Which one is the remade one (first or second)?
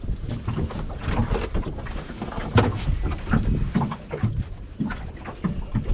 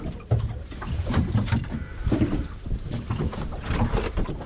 second